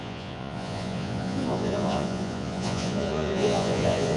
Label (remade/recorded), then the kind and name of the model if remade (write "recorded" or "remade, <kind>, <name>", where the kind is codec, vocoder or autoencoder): remade, vocoder, Vocos